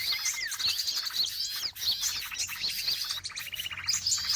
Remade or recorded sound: recorded